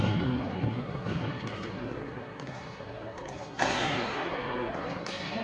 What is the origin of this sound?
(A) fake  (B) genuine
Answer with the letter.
A